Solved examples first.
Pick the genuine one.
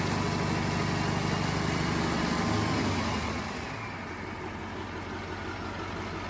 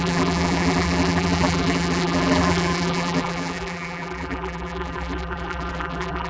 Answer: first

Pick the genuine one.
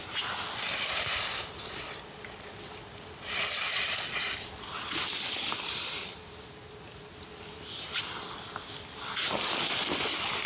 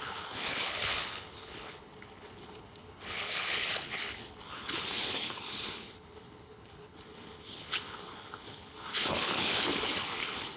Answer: first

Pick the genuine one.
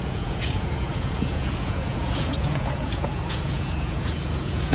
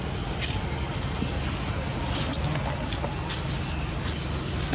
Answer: second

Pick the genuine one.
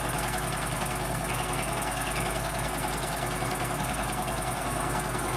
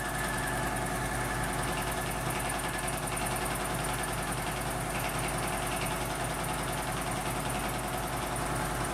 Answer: second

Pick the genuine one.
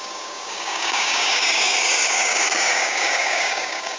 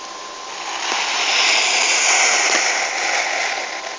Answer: second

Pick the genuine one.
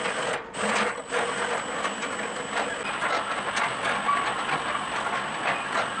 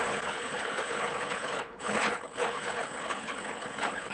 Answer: first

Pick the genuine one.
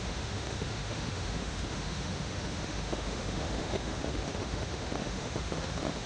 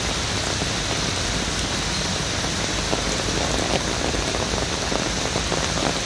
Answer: second